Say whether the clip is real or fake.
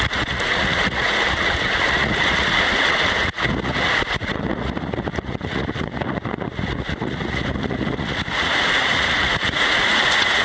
fake